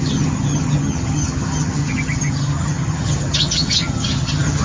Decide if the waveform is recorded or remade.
remade